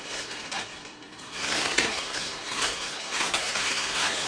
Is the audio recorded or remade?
remade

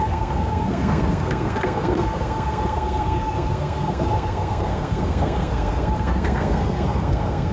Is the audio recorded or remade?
remade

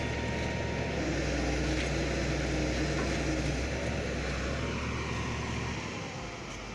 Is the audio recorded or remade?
recorded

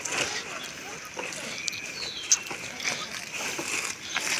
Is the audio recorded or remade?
recorded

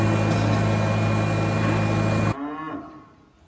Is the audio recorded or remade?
recorded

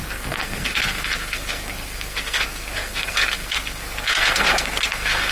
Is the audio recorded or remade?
remade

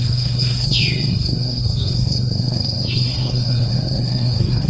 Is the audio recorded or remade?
remade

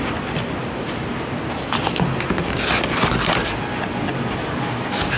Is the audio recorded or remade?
recorded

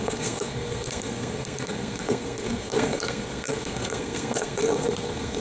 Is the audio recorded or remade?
remade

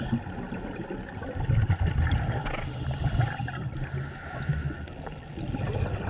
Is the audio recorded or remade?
recorded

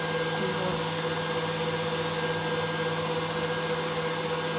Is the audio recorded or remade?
recorded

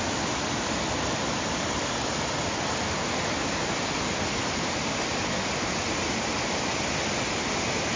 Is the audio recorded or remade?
recorded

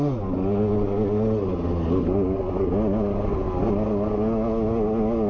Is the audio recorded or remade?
recorded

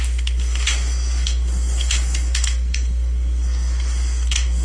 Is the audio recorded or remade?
remade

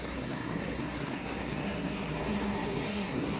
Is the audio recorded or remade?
remade